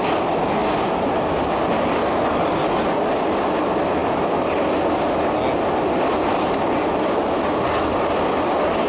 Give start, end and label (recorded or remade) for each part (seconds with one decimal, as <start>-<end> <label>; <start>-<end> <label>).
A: 0.0-8.9 recorded